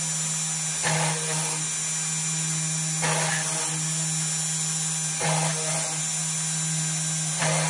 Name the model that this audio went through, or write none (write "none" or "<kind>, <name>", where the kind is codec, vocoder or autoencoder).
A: none